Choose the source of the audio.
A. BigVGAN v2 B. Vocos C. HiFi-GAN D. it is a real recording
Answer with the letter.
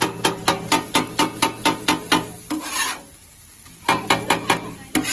D